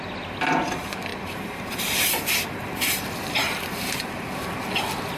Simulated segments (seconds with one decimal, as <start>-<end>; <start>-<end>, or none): 1.1-3.1